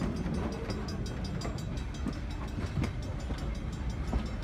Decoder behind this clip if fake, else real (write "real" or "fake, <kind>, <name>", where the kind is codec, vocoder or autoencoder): real